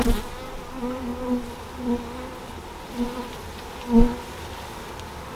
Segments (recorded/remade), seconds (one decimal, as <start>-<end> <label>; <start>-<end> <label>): 0.0-5.4 recorded